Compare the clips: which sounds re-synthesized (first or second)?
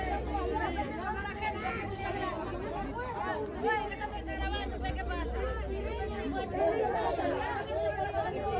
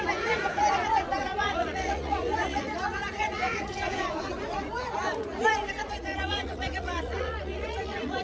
second